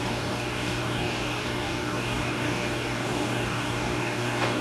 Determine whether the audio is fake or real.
fake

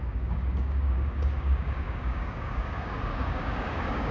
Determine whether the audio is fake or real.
fake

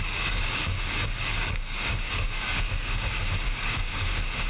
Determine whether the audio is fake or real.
fake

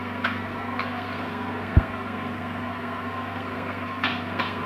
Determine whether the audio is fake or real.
fake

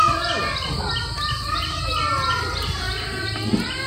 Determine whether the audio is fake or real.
real